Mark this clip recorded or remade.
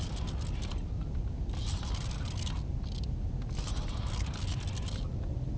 recorded